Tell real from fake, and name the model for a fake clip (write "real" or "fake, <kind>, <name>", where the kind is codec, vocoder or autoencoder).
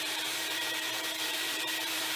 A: fake, vocoder, BigVGAN v2